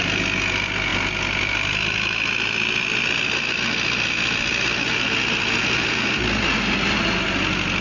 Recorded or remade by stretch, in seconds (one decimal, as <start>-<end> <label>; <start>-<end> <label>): 0.0-7.8 recorded